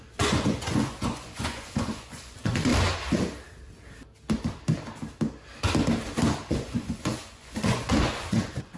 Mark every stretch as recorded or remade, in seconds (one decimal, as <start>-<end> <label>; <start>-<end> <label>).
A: 0.0-2.7 remade; 2.7-6.5 recorded; 6.5-8.8 remade